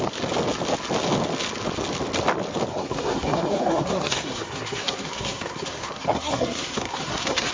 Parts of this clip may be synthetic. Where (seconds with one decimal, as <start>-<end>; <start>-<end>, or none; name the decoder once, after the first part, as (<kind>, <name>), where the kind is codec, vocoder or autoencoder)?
2.7-7.5 (codec, SNAC)